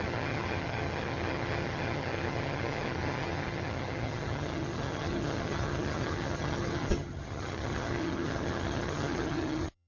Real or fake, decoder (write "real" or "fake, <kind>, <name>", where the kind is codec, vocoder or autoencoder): fake, vocoder, HiFi-GAN